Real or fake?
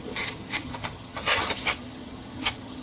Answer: fake